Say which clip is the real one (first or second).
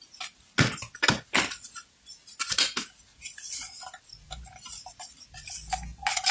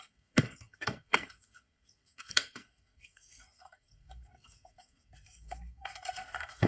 first